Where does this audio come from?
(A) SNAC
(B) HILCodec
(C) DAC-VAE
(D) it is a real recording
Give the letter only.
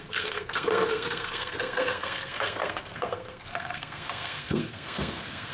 A